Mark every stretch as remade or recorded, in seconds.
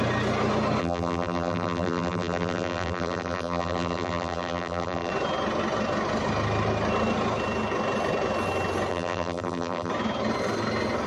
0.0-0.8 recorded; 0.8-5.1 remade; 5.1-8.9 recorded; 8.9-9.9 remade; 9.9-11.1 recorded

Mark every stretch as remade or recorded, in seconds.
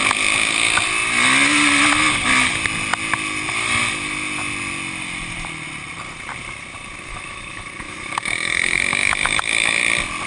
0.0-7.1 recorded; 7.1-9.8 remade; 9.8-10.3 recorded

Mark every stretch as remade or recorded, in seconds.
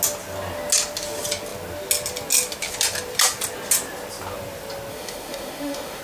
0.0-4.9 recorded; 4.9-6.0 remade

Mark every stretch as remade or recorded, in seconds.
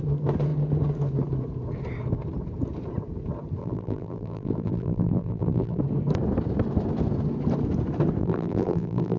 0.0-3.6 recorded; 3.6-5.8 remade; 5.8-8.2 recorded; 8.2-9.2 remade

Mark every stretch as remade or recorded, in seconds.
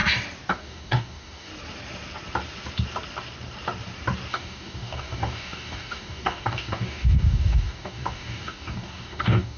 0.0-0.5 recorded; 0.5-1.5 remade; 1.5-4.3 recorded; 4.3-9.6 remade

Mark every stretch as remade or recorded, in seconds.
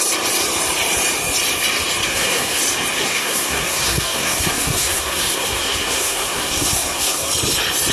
0.0-2.1 recorded; 2.1-2.6 remade; 2.6-3.0 recorded; 3.0-7.3 remade; 7.3-7.9 recorded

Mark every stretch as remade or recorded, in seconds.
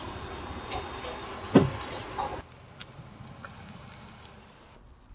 0.0-5.1 recorded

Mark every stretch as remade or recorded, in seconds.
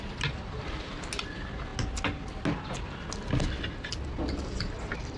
0.0-5.2 recorded